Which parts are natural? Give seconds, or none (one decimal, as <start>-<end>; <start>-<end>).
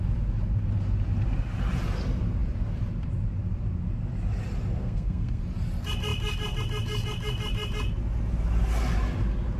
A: 0.0-4.8; 5.4-9.6